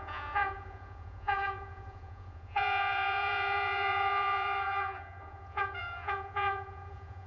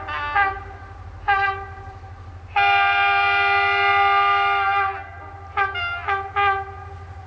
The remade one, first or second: first